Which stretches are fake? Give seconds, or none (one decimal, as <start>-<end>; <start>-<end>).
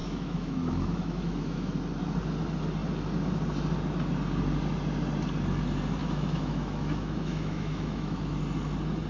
0.0-1.7; 6.0-8.4